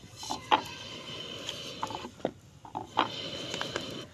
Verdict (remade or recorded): recorded